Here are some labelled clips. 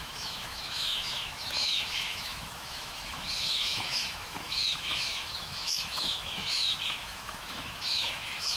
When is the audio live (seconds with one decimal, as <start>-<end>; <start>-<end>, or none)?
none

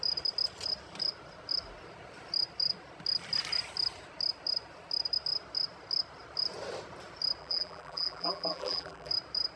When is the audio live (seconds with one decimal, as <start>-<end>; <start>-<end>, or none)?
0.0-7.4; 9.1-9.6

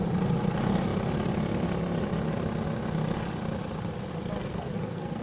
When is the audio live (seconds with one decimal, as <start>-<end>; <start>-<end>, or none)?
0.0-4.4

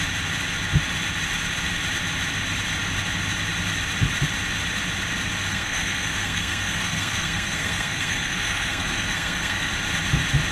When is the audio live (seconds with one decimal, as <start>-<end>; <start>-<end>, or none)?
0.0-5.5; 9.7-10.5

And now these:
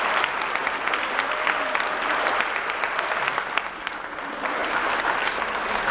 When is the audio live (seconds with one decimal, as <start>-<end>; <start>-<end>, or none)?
0.0-5.9

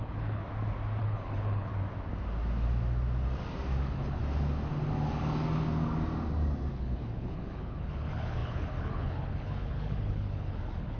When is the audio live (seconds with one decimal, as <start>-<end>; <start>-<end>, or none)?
0.4-1.0; 1.7-3.8; 4.2-6.7

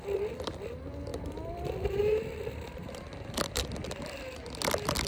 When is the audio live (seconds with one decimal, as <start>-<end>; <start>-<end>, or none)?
0.0-1.1; 4.2-5.1